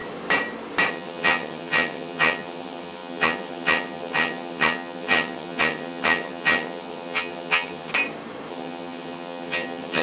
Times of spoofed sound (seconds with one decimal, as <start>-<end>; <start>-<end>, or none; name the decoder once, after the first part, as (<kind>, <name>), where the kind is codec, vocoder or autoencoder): 0.9-7.9 (vocoder, HiFi-GAN); 8.5-10.0